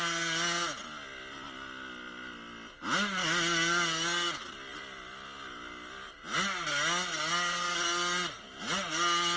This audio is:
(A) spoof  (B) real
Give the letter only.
B